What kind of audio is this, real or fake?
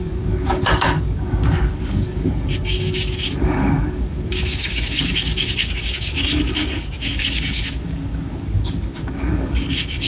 fake